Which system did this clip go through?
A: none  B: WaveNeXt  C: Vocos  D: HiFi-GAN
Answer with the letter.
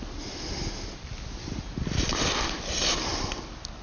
A